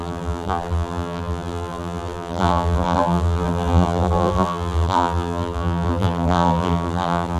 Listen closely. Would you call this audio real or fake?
fake